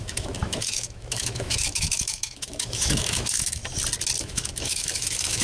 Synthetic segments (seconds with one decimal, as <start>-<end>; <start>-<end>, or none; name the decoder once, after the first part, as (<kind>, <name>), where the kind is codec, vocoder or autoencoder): 0.0-3.6 (autoencoder, DAC-VAE); 4.2-5.4